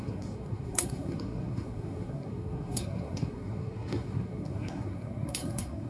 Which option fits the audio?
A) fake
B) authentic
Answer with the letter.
A